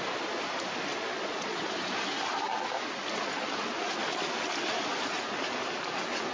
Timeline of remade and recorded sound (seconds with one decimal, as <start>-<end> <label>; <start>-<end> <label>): 0.0-0.9 recorded; 0.9-1.6 remade; 1.6-6.3 recorded